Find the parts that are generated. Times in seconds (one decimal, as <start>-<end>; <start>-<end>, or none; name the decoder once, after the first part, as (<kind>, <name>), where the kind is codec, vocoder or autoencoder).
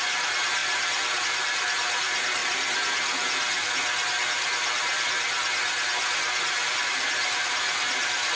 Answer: 0.0-2.4 (vocoder, BigVGAN v2); 6.7-8.4